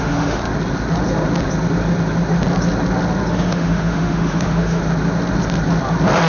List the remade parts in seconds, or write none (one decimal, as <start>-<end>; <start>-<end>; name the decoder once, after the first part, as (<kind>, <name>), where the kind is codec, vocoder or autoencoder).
0.0-0.4 (autoencoder, DAC-VAE); 3.3-4.8